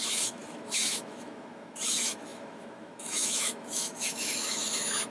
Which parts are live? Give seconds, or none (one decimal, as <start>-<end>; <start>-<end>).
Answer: none